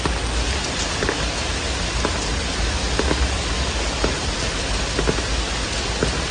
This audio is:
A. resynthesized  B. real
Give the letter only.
B